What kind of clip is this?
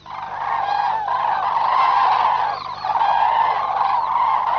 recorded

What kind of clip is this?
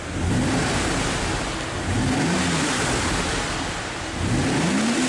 recorded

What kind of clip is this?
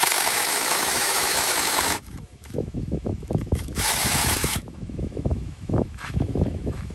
remade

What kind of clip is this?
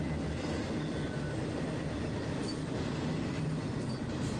recorded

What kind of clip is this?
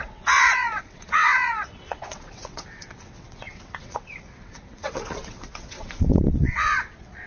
remade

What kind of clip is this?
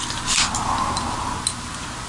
recorded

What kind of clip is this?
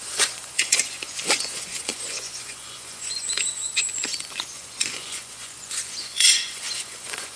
remade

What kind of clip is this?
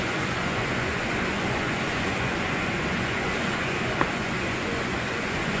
remade